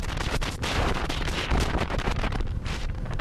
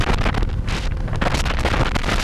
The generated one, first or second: first